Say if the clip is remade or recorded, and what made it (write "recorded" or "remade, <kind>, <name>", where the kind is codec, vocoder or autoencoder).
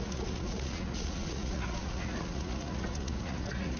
remade, vocoder, Vocos